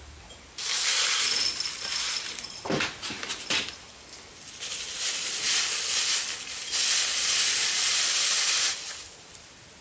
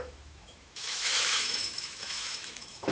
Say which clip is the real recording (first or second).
first